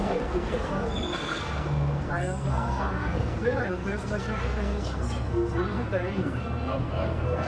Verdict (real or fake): fake